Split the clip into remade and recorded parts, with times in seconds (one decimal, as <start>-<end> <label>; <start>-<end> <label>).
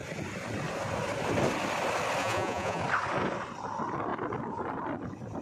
0.0-2.2 recorded; 2.2-2.8 remade; 2.8-5.4 recorded